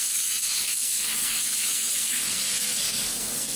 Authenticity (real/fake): fake